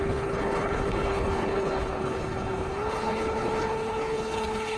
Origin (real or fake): fake